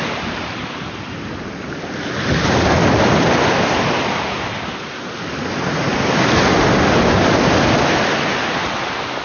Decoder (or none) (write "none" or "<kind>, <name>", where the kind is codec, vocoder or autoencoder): none